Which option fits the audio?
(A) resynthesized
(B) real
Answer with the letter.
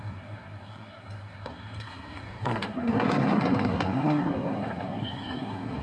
A